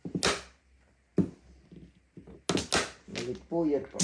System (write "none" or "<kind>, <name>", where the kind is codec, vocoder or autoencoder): none